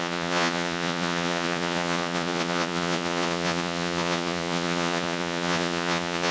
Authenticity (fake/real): fake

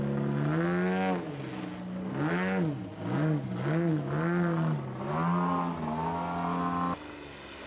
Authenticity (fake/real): real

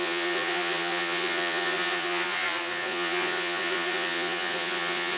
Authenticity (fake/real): fake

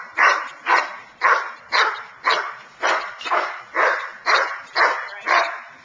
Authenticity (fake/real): real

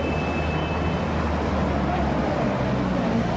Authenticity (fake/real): real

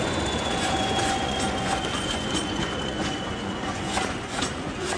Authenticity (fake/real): fake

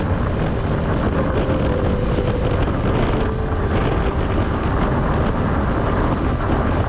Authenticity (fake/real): real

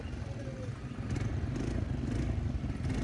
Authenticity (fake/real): real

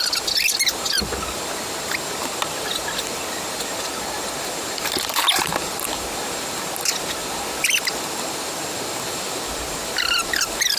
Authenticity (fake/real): real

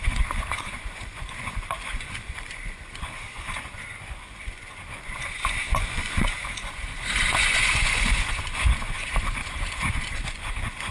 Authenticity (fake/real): fake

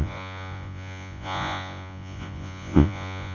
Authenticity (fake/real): fake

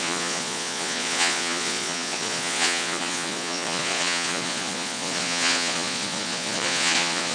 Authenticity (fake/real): fake